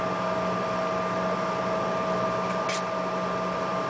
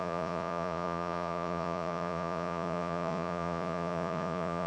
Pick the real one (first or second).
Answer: first